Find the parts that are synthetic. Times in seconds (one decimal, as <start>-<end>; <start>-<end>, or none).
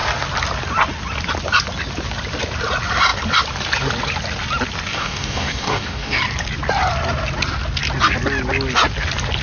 4.9-6.2